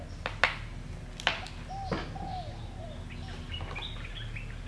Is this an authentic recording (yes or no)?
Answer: yes